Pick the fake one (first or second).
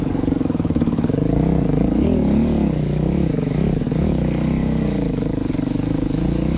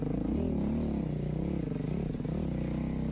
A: first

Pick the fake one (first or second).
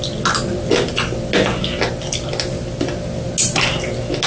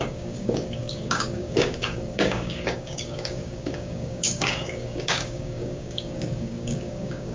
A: second